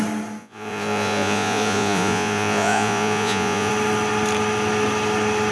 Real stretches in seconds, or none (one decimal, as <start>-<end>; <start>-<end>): 0.0-0.4; 3.7-5.5